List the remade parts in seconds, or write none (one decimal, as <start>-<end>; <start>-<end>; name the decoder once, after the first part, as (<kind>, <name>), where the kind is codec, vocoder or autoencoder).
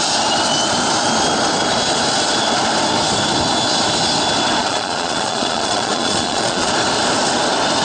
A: 4.6-6.7 (vocoder, Vocos)